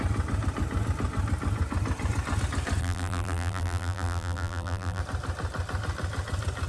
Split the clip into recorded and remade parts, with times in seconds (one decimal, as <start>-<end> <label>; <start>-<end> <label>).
0.0-2.8 recorded; 2.8-5.0 remade; 5.0-6.7 recorded